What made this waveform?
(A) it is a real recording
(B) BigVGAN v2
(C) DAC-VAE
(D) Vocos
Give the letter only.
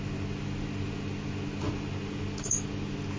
A